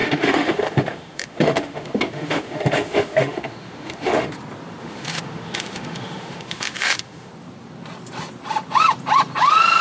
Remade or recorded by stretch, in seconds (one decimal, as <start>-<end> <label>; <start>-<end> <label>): 0.0-4.3 remade; 4.3-4.8 recorded; 4.8-7.3 remade; 7.3-9.8 recorded